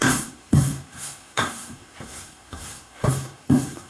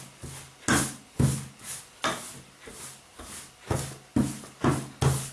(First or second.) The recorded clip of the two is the second